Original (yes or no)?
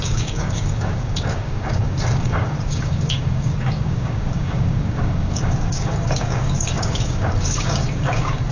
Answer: no